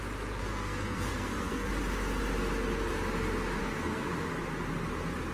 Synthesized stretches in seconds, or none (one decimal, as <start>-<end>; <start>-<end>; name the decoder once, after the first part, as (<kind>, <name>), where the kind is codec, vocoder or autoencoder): 0.4-1.7 (codec, SNAC); 3.6-4.1